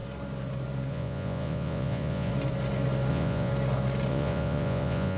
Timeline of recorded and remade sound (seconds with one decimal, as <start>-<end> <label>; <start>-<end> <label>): 0.0-0.9 recorded; 0.9-2.3 remade; 2.3-3.1 recorded; 3.1-3.5 remade; 3.5-4.1 recorded; 4.1-5.2 remade